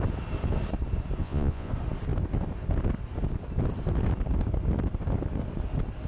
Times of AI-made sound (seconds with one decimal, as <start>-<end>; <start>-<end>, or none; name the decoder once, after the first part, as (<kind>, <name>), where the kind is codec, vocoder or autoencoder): 1.2-1.7 (vocoder, Vocos)